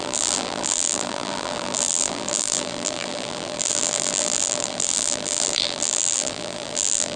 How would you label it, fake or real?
fake